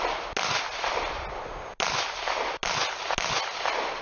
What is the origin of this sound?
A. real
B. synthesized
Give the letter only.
A